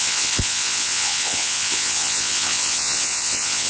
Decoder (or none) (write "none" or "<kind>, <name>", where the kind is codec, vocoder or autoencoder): vocoder, WaveNeXt